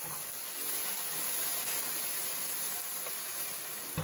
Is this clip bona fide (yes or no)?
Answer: yes